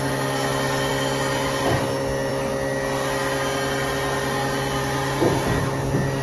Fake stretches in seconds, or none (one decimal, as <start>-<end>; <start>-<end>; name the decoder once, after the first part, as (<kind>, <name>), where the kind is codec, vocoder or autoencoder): none